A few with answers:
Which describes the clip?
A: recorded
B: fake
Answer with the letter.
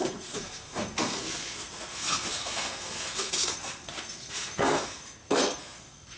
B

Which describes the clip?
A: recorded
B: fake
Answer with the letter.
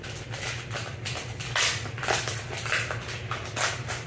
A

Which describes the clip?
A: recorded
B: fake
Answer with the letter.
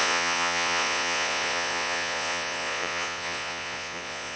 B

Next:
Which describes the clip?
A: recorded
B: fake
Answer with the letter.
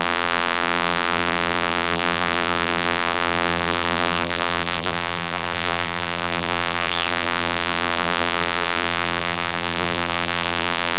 B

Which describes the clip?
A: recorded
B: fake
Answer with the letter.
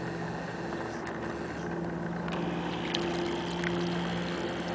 A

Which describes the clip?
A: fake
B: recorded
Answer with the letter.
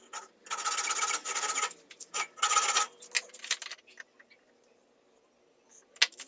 B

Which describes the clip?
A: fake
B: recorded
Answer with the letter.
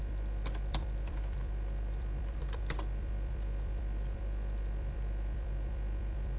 A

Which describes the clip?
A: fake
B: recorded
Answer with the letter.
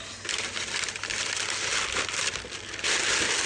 B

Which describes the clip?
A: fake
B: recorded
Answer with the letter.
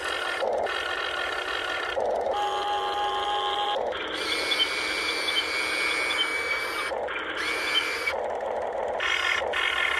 B